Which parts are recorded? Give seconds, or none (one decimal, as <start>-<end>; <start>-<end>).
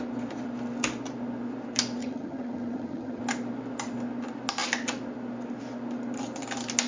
0.0-2.0; 3.2-6.9